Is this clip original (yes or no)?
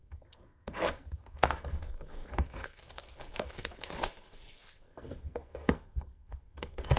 no